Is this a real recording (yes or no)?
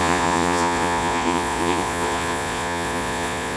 no